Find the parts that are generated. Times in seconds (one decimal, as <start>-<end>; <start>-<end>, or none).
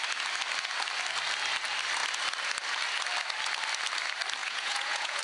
4.4-5.2